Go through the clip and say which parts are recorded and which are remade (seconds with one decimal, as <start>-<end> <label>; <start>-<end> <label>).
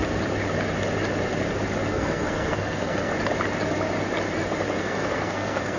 0.0-1.9 recorded; 1.9-3.1 remade; 3.1-4.8 recorded; 4.8-5.8 remade